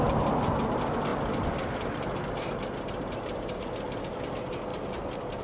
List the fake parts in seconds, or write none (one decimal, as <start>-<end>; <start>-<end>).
none